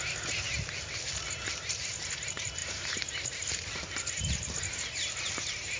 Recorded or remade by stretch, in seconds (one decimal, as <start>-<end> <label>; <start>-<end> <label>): 0.0-5.8 recorded